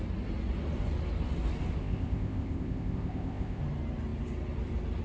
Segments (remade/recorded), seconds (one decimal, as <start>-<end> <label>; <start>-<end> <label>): 0.0-1.8 recorded; 1.8-3.6 remade; 3.6-5.0 recorded